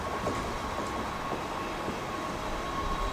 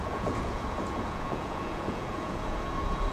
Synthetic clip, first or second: second